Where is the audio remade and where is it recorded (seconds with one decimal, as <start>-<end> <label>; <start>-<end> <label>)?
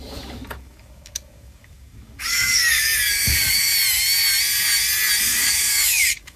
0.0-3.7 remade; 3.7-5.2 recorded; 5.2-6.4 remade